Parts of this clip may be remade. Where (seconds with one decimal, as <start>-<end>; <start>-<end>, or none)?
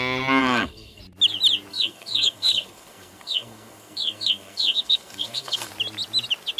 0.4-1.0; 1.7-5.7